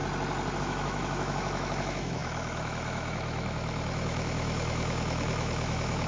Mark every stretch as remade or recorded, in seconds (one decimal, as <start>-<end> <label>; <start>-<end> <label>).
0.0-0.6 recorded; 0.6-6.1 remade